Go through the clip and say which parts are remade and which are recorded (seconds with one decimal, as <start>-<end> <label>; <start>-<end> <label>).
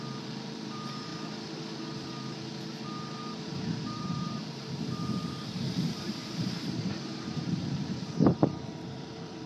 0.0-1.1 remade; 1.1-3.2 recorded; 3.2-9.5 remade